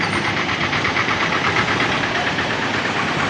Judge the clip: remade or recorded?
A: remade